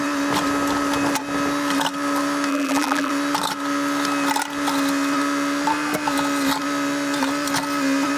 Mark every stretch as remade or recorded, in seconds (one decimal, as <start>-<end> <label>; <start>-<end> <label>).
0.0-2.5 recorded; 2.5-3.1 remade; 3.1-8.2 recorded